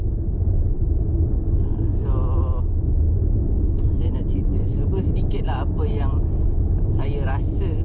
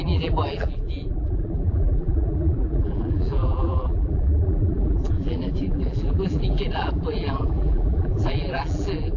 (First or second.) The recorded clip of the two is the first